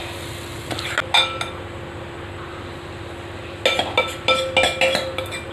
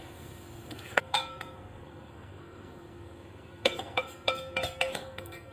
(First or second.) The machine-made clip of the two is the second